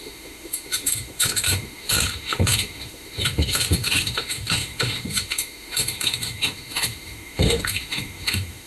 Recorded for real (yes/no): no